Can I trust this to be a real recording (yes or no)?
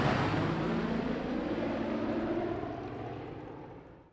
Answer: yes